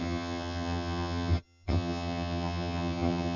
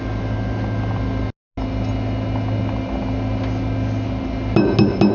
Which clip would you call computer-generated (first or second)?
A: first